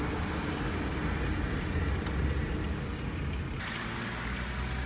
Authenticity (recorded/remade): recorded